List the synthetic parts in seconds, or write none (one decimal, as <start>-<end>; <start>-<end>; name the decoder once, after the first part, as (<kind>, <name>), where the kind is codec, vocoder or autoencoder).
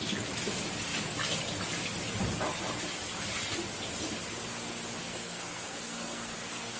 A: 5.0-6.8 (codec, SNAC)